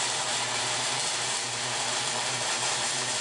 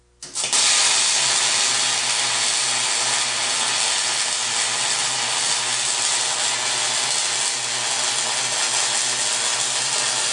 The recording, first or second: second